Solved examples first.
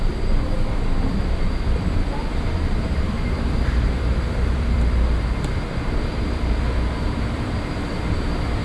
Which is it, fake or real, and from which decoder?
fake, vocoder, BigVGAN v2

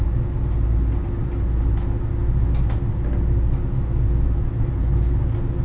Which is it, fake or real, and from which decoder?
real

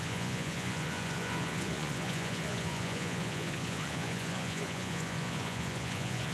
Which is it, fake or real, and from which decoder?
fake, vocoder, Vocos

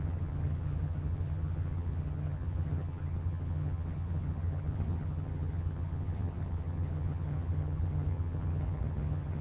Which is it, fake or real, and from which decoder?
fake, vocoder, HiFi-GAN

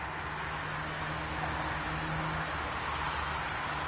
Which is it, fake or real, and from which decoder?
real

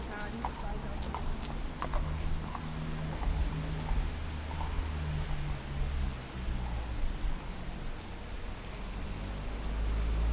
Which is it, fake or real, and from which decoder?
real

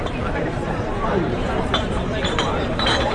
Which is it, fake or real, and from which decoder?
fake, vocoder, BigVGAN v2